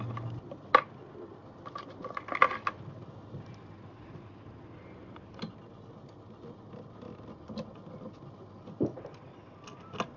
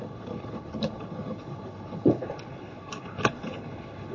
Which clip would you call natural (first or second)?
first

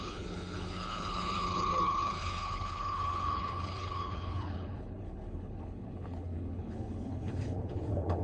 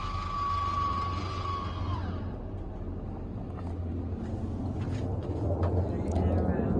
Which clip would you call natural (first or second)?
second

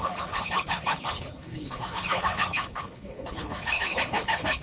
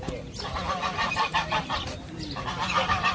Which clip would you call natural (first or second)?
second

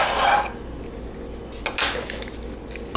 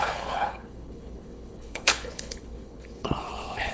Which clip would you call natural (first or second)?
first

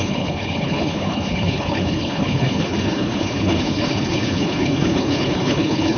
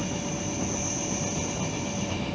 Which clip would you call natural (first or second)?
second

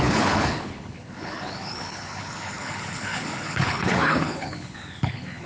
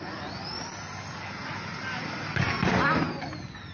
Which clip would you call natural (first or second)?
second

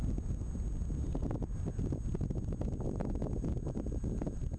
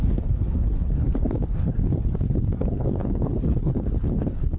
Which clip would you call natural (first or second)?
first